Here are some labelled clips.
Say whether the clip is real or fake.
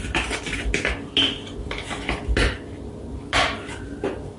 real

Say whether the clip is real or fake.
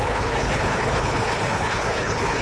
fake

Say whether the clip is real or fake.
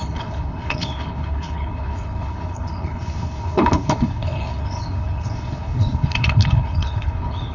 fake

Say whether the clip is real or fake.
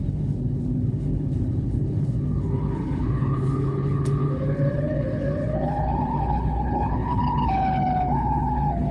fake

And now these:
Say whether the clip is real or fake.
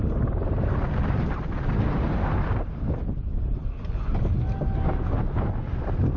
real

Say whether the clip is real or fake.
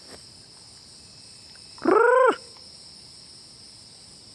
real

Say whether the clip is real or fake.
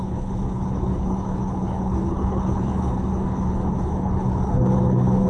fake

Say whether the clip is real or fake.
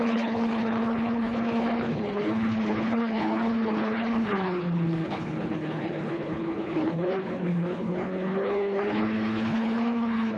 fake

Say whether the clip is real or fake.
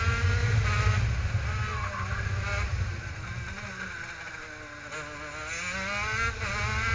real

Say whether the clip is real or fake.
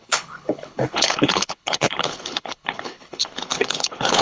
fake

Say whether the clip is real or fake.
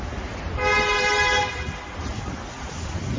real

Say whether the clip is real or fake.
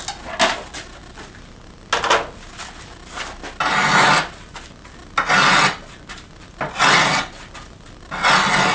real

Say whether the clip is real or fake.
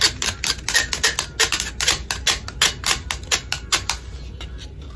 real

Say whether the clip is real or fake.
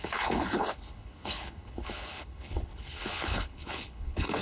fake